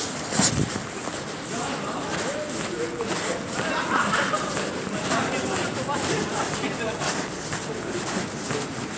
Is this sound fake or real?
real